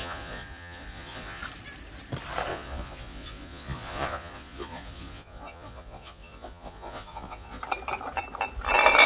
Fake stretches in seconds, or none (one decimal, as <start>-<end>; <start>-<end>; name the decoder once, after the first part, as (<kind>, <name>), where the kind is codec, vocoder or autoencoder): 0.0-1.4 (vocoder, Vocos); 2.5-7.6